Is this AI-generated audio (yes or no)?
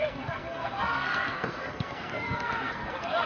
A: yes